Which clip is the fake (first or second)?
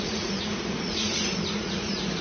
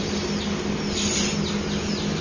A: first